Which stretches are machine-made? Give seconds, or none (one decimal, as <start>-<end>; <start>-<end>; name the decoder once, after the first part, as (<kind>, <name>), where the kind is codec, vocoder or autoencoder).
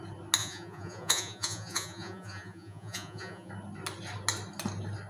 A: 0.4-3.5 (vocoder, Vocos)